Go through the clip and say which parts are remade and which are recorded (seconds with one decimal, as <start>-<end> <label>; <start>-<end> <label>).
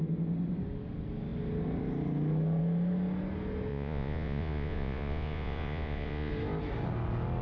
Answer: 0.0-3.7 recorded; 3.7-6.3 remade; 6.3-7.4 recorded